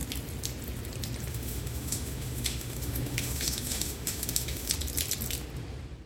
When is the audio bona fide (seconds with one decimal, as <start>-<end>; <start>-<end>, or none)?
0.0-1.3; 4.7-6.1

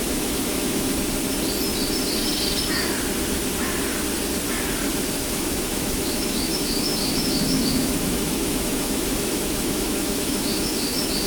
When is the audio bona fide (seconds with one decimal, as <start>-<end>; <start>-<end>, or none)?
0.9-5.3

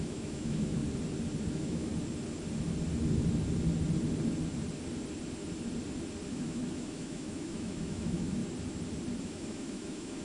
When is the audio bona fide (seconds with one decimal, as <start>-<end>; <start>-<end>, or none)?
0.8-1.5; 1.9-6.3; 8.4-9.2

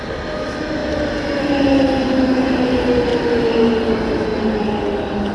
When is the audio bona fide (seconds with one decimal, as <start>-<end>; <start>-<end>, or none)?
0.0-5.3